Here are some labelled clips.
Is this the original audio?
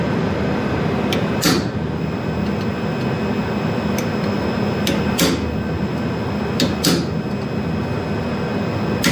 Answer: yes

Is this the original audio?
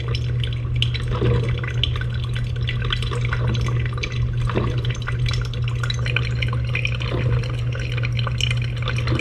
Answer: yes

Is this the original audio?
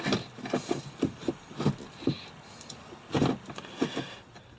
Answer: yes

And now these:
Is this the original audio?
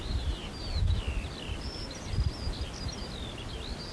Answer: yes